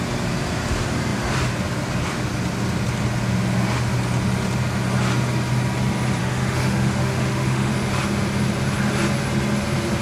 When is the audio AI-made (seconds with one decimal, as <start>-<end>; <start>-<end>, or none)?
6.2-7.7